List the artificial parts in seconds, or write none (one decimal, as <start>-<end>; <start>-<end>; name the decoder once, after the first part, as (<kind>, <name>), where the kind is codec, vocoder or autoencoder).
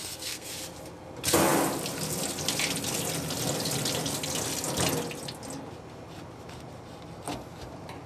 0.0-0.5 (codec, SNAC)